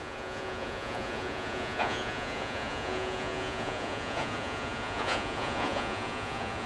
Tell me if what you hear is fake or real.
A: fake